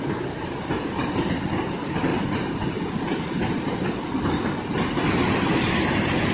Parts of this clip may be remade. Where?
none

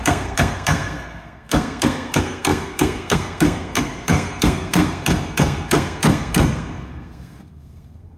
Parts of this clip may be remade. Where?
0.0-8.2 (codec, SNAC)

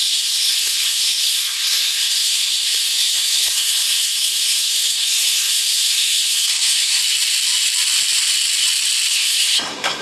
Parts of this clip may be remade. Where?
0.0-7.0 (codec, SNAC); 9.1-10.0

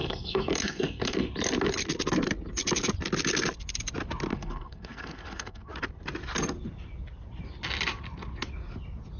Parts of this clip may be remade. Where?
0.0-1.3 (codec, SNAC); 4.3-5.7

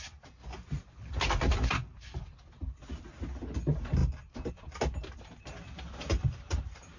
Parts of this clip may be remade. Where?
none

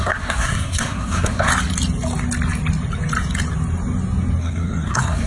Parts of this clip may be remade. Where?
0.0-1.5 (codec, SNAC); 4.4-5.3

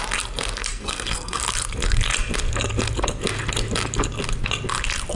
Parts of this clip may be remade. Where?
0.7-1.4 (codec, SNAC)